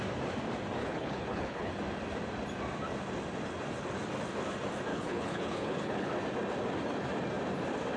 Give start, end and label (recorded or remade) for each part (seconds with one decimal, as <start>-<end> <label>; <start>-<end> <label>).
0.0-0.8 recorded; 0.8-1.7 remade; 1.7-4.9 recorded; 4.9-6.1 remade; 6.1-8.0 recorded